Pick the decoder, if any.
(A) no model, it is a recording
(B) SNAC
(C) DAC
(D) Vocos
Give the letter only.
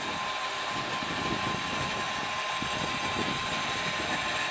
A